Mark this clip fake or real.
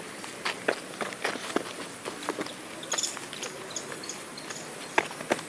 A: real